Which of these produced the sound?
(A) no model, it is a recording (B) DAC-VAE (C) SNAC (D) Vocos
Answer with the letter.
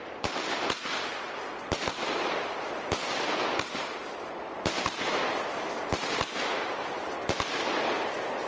A